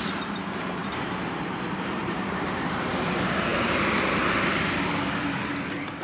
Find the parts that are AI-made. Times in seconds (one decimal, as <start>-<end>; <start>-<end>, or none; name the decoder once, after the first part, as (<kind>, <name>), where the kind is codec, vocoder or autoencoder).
0.8-2.7 (vocoder, BigVGAN v2)